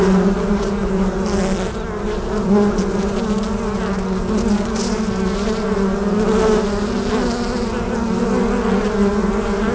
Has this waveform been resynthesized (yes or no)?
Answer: no